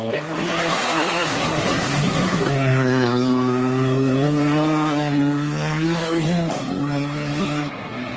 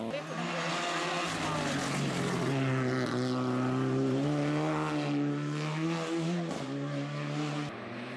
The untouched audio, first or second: second